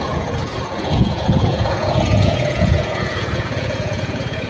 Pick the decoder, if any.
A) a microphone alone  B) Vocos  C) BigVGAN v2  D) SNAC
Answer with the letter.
B